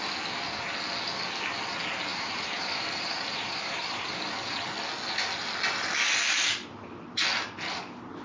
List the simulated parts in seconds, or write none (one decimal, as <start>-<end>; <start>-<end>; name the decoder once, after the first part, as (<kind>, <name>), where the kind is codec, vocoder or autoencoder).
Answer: 2.1-4.2 (vocoder, BigVGAN v2)